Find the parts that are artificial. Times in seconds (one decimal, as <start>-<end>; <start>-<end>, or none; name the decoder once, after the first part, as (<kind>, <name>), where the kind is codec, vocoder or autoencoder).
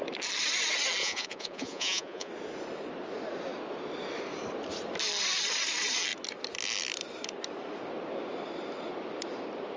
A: 1.0-2.3 (vocoder, Vocos)